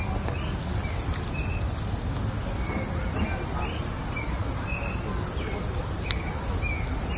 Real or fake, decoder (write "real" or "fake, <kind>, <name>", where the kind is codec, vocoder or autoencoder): real